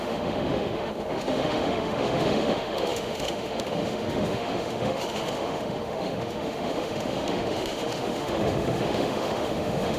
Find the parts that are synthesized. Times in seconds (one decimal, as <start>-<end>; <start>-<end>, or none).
0.0-10.0